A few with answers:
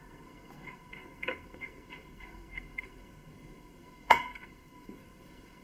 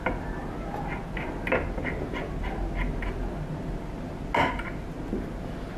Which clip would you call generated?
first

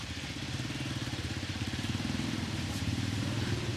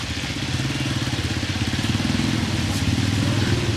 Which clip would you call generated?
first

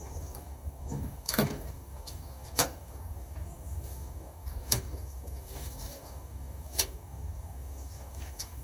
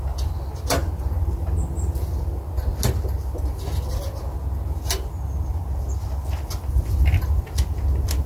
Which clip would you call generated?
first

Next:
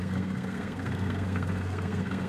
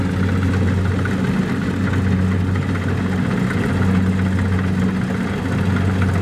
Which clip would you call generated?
first